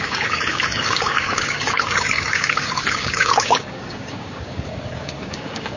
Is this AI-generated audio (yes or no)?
yes